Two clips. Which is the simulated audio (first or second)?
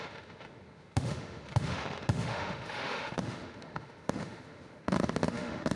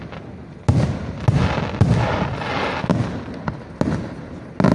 first